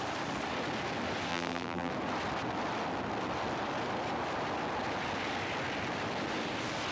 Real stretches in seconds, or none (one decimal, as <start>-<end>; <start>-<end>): 0.0-1.3; 1.9-6.9